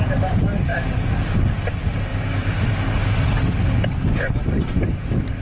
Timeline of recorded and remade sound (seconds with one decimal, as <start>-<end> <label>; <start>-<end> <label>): 0.0-2.1 recorded; 2.1-2.6 remade; 2.6-5.4 recorded